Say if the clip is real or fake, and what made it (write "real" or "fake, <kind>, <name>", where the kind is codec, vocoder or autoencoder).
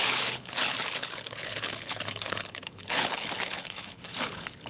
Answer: fake, codec, HILCodec